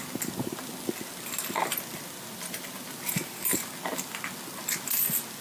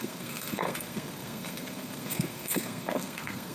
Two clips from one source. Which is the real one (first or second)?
first